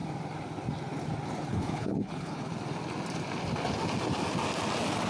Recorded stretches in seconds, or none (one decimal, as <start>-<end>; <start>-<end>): 0.0-1.5; 2.5-5.1